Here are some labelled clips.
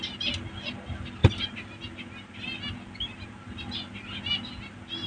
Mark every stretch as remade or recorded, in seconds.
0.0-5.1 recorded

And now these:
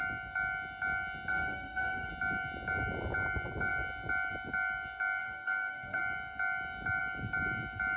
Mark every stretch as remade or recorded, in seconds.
0.0-1.3 recorded; 1.3-2.1 remade; 2.1-5.2 recorded; 5.2-6.0 remade; 6.0-8.0 recorded

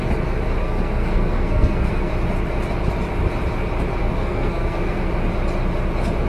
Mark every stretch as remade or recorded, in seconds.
0.0-0.6 recorded; 0.6-2.1 remade; 2.1-4.0 recorded; 4.0-5.1 remade; 5.1-6.3 recorded

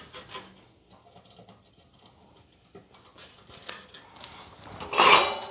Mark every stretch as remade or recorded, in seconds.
0.0-5.5 recorded

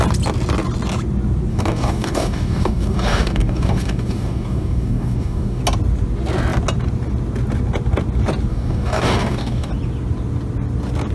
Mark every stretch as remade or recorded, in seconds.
0.0-1.5 recorded; 1.5-5.6 remade; 5.6-8.5 recorded; 8.5-9.7 remade; 9.7-11.1 recorded

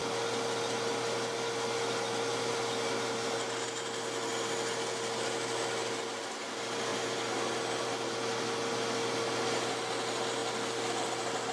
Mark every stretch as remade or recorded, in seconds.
0.0-11.5 recorded

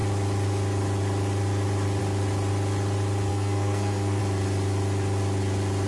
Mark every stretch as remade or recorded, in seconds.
0.0-3.3 recorded; 3.3-4.2 remade; 4.2-5.9 recorded